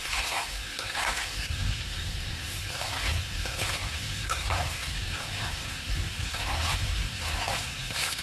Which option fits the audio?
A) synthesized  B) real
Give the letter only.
A